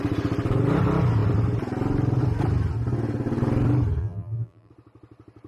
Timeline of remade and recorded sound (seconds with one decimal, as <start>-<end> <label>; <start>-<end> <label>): 0.0-4.0 recorded; 4.0-4.7 remade; 4.7-5.5 recorded